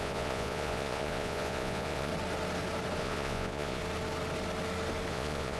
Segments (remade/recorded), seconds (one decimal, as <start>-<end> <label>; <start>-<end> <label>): 0.0-2.1 remade; 2.1-3.0 recorded; 3.0-3.8 remade; 3.8-5.1 recorded; 5.1-5.6 remade